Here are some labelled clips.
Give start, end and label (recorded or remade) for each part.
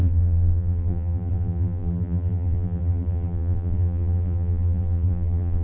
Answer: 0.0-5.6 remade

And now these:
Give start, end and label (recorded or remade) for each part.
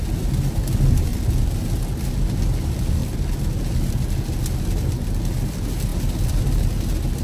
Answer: 0.0-7.2 recorded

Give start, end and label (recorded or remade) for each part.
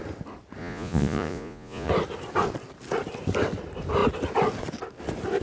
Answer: 0.0-0.6 recorded; 0.6-1.9 remade; 1.9-5.4 recorded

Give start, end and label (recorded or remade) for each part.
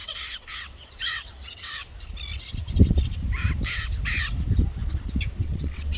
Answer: 0.0-1.8 remade; 1.8-5.4 recorded; 5.4-6.0 remade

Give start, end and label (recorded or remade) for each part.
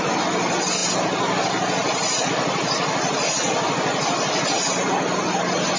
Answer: 0.0-5.8 recorded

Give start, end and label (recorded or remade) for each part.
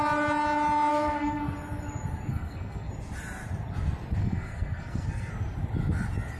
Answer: 0.0-0.9 recorded; 0.9-1.4 remade; 1.4-2.3 recorded; 2.3-2.9 remade; 2.9-4.2 recorded; 4.2-5.3 remade; 5.3-6.4 recorded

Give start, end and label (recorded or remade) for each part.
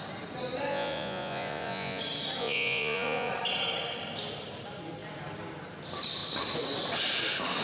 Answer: 0.0-0.7 recorded; 0.7-2.0 remade; 2.0-2.4 recorded; 2.4-3.3 remade; 3.3-7.6 recorded